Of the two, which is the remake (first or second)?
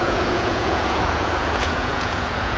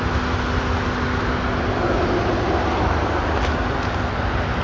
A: first